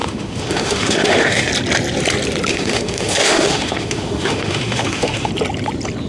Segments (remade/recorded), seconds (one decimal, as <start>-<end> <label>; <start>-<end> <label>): 0.0-1.5 remade; 1.5-2.5 recorded; 2.5-5.3 remade; 5.3-6.1 recorded